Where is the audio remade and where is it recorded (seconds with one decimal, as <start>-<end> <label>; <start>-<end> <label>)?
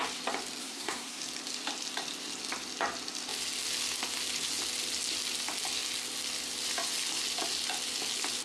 0.0-0.6 recorded; 0.6-1.2 remade; 1.2-8.4 recorded